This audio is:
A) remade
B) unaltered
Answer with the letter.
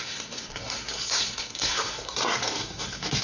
A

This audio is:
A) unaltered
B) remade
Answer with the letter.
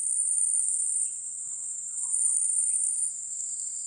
B